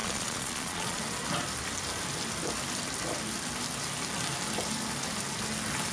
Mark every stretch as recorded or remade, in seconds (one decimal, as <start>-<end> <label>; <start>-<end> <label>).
0.0-1.0 remade; 1.0-5.9 recorded